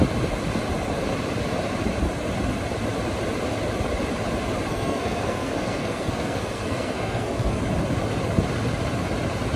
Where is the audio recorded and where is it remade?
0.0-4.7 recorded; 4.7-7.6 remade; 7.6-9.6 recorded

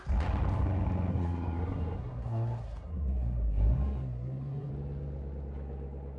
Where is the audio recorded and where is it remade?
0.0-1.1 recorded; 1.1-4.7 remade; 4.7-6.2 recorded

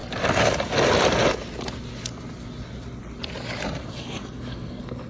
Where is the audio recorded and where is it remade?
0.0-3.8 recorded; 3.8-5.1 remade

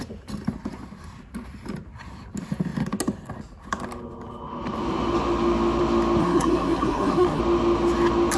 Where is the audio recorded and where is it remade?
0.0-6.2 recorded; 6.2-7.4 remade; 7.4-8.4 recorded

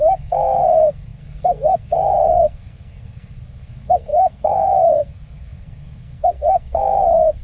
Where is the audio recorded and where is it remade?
0.0-7.4 remade

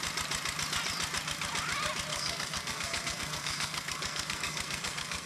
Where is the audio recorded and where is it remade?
0.0-2.1 recorded; 2.1-5.3 remade